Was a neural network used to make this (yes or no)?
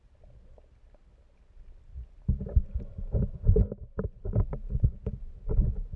no